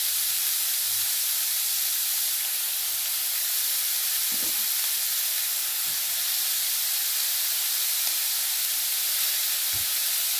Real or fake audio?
fake